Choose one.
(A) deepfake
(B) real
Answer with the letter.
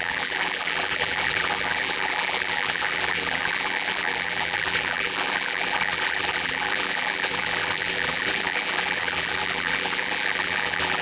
A